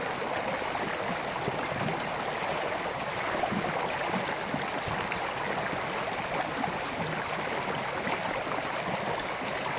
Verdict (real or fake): real